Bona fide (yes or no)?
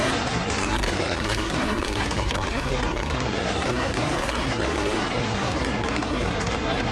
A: no